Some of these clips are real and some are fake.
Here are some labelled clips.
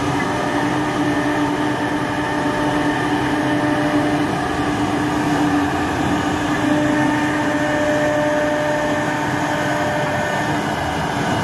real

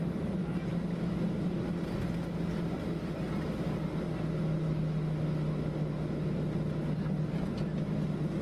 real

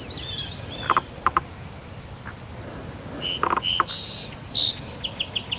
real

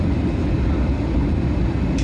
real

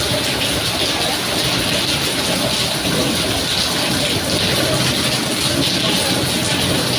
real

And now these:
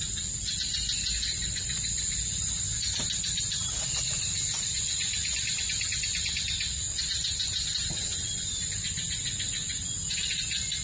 real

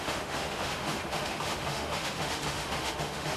fake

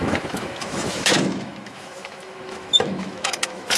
fake